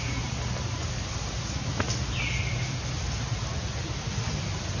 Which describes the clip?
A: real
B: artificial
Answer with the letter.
A